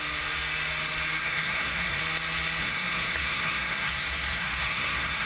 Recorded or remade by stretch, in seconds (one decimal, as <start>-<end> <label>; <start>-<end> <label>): 0.0-1.2 recorded; 1.2-2.0 remade; 2.0-2.6 recorded; 2.6-5.3 remade